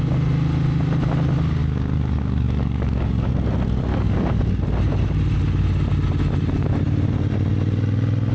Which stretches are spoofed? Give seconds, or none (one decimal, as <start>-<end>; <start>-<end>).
1.6-3.3; 3.9-4.4